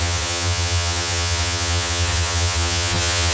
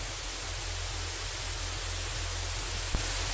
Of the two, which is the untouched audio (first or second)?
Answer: second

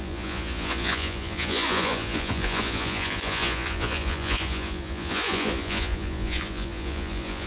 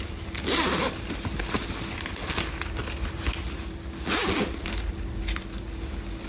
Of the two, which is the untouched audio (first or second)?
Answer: second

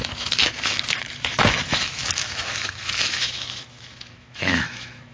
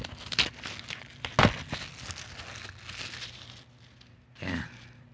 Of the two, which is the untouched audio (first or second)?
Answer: second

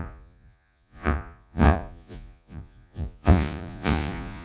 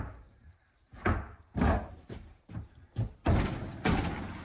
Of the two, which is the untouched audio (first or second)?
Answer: second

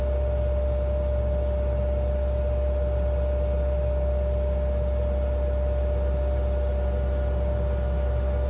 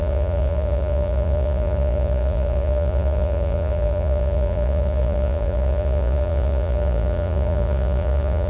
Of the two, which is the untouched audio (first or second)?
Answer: first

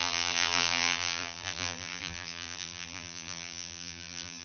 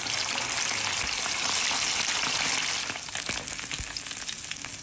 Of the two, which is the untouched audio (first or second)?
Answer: second